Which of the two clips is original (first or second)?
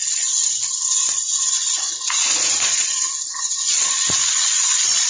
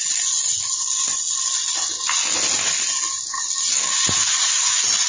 second